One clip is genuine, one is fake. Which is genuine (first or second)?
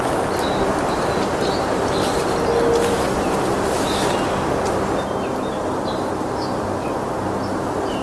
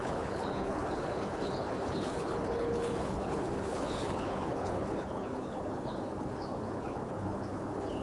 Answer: first